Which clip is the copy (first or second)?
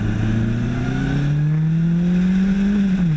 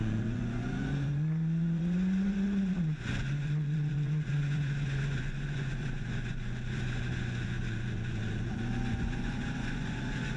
second